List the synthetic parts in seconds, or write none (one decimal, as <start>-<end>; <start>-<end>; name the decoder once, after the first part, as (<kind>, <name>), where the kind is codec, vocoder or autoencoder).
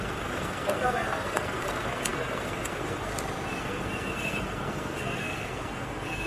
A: 0.0-3.1 (codec, SNAC); 3.6-6.3